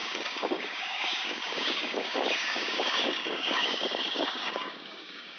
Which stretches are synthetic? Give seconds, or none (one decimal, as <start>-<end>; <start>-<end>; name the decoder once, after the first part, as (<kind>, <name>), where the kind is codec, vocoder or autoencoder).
0.0-5.4 (codec, DAC)